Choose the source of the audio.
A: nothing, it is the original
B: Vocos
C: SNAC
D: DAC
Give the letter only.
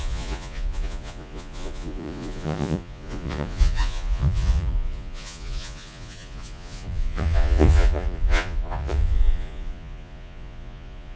B